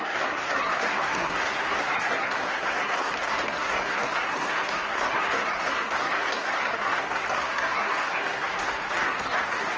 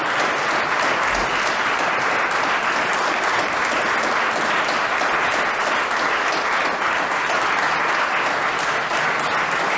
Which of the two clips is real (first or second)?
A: second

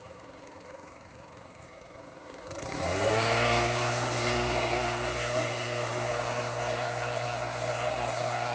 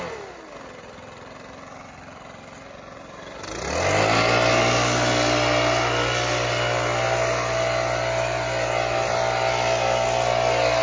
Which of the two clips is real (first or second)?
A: second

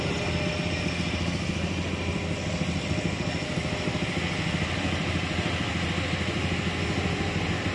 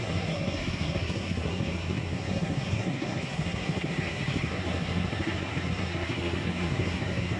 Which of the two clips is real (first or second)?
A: first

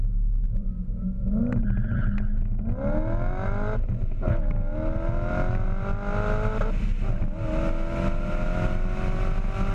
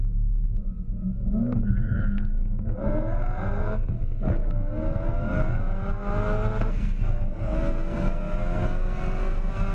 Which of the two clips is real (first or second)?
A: first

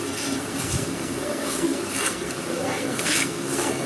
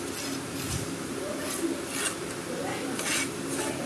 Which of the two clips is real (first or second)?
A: second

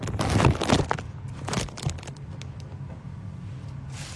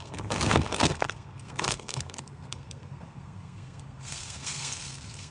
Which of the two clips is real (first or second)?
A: first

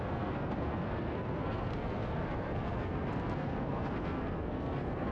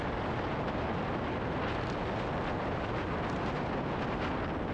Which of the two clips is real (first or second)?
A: second